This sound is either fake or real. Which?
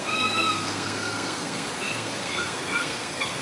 fake